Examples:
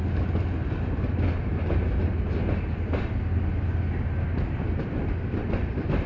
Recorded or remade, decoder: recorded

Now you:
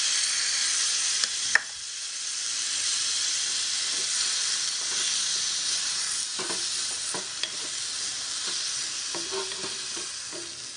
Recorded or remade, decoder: recorded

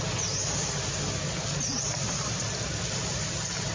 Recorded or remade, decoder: recorded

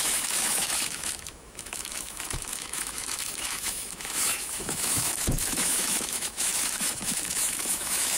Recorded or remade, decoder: remade, autoencoder, DAC-VAE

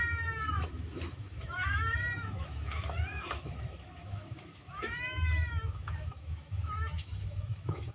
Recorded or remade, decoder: remade, autoencoder, DAC-VAE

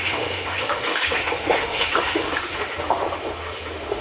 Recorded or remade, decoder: remade, autoencoder, DAC-VAE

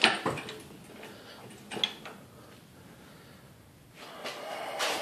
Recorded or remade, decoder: recorded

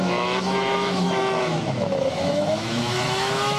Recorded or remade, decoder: remade, autoencoder, DAC-VAE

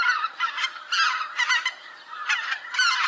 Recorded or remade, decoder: recorded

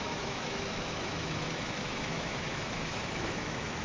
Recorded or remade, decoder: remade, autoencoder, DAC-VAE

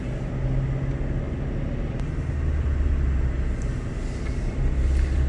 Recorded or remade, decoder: recorded